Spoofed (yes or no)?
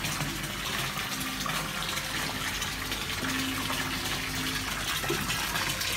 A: no